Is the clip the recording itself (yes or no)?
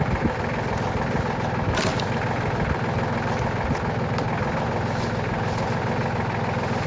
yes